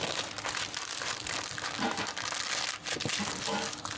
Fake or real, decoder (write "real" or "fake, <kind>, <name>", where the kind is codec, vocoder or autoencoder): real